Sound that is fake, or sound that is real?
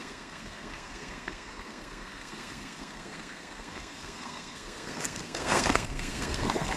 fake